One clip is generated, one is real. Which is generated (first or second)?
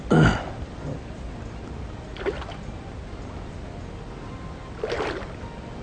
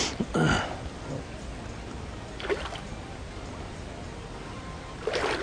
second